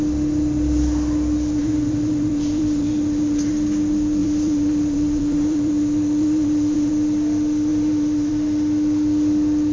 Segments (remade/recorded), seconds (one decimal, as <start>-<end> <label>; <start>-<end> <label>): 0.0-1.6 recorded; 1.6-3.5 remade; 3.5-4.2 recorded; 4.2-6.9 remade; 6.9-7.7 recorded; 7.7-8.3 remade; 8.3-9.7 recorded